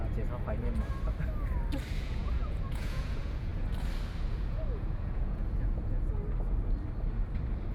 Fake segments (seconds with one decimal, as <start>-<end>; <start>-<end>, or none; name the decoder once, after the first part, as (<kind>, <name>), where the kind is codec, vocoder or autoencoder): 2.0-3.5 (vocoder, Vocos); 4.3-6.1